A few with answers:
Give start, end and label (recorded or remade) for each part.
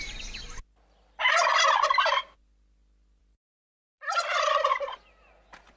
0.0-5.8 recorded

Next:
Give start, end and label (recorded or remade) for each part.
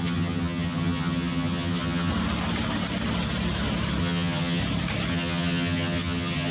0.0-2.1 remade; 2.1-4.0 recorded; 4.0-4.6 remade; 4.6-5.1 recorded; 5.1-6.5 remade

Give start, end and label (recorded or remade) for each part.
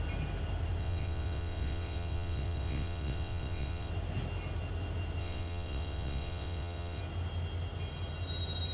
0.0-0.8 recorded; 0.8-3.9 remade; 3.9-5.2 recorded; 5.2-7.0 remade; 7.0-8.7 recorded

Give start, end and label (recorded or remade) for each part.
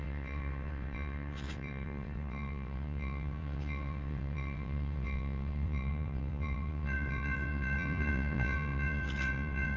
0.0-9.8 remade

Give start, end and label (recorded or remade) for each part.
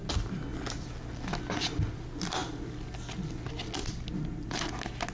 0.0-5.1 recorded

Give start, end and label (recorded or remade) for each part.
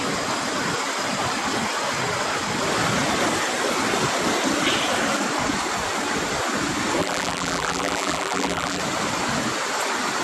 0.0-7.0 recorded; 7.0-8.8 remade; 8.8-10.2 recorded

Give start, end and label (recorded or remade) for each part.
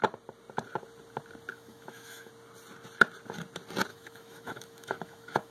0.0-1.5 recorded; 1.5-2.3 remade; 2.3-3.9 recorded; 3.9-5.5 remade